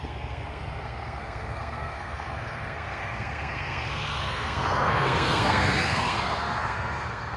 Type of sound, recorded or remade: remade